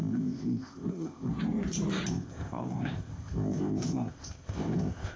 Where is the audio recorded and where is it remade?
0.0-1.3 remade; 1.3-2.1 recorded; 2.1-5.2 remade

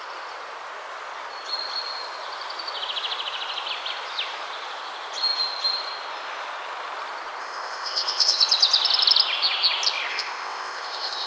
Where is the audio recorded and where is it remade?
0.0-7.4 recorded; 7.4-8.4 remade; 8.4-10.1 recorded; 10.1-11.3 remade

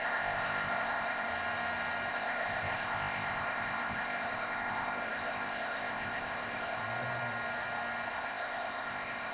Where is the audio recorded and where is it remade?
0.0-1.3 remade; 1.3-2.1 recorded; 2.1-6.8 remade; 6.8-8.1 recorded; 8.1-9.3 remade

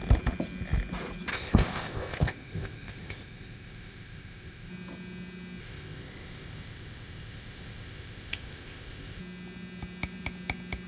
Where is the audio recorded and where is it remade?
0.0-1.3 recorded; 1.3-4.7 remade; 4.7-5.6 recorded; 5.6-9.2 remade; 9.2-10.9 recorded

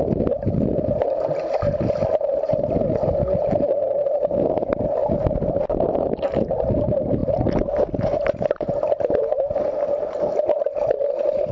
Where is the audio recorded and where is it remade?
0.0-11.5 recorded

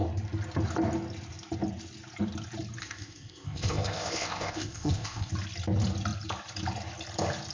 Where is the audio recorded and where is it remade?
0.0-2.8 recorded; 2.8-5.3 remade; 5.3-7.5 recorded

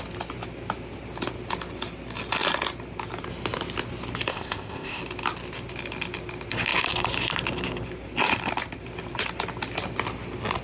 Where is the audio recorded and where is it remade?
0.0-4.3 recorded; 4.3-5.0 remade; 5.0-10.6 recorded

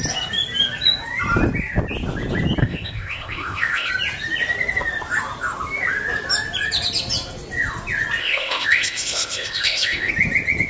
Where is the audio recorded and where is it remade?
0.0-2.6 recorded; 2.6-3.9 remade; 3.9-8.2 recorded; 8.2-10.1 remade; 10.1-10.7 recorded